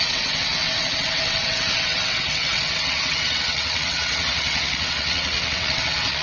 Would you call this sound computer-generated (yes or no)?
yes